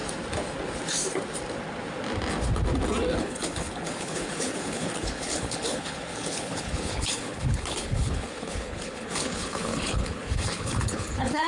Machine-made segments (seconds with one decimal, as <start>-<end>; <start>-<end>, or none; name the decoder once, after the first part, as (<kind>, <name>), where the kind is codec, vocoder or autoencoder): 3.2-11.5 (codec, HILCodec)